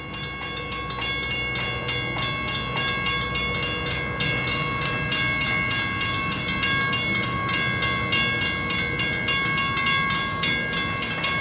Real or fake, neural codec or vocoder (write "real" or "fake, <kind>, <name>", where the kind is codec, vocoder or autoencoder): real